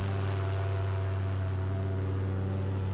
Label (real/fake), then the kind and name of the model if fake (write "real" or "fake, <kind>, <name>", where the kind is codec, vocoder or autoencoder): real